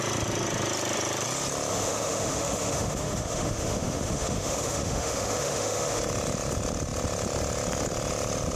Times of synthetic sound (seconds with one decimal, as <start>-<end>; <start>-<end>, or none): 1.7-6.0

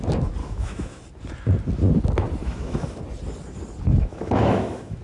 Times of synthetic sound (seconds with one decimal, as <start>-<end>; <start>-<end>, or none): 0.4-1.0; 2.4-3.0; 3.9-5.0

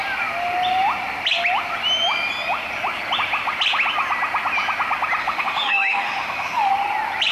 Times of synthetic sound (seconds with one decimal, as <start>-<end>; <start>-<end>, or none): 5.2-6.7

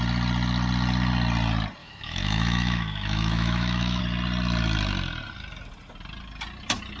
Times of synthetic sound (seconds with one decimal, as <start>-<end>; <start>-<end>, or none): 1.8-4.0

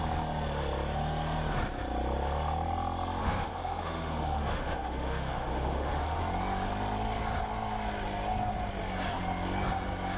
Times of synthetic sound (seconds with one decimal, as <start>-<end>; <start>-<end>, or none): 3.2-6.2

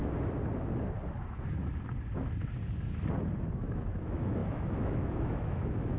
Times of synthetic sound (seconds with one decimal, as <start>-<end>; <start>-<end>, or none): 3.6-6.0

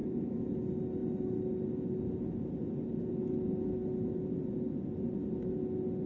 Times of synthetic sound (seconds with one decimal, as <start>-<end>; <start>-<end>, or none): 0.0-0.5

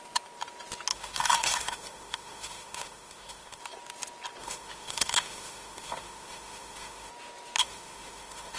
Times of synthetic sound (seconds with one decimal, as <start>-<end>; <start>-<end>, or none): 0.9-3.6; 4.4-7.1; 7.6-8.6